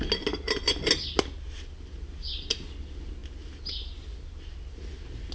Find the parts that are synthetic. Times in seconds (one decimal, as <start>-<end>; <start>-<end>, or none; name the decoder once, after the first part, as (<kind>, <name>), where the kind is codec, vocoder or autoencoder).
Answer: none